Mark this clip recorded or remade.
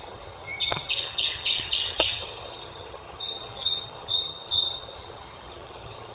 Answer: remade